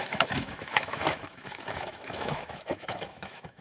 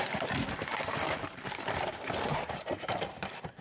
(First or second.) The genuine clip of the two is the second